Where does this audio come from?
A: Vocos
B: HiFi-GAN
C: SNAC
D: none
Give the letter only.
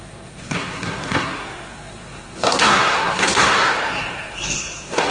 C